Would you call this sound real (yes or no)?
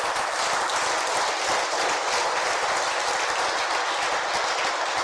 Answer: yes